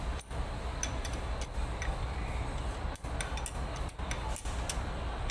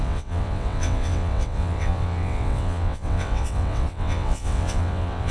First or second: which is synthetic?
second